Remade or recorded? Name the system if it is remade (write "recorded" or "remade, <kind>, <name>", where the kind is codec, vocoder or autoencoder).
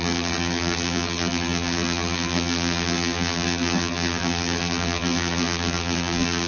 remade, vocoder, BigVGAN v2